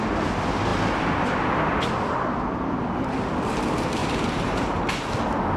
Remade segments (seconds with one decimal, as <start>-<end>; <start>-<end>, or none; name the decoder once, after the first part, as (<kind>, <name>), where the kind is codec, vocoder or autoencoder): 4.0-4.8 (vocoder, BigVGAN v2)